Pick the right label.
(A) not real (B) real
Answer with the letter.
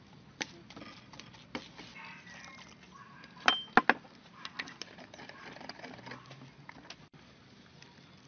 B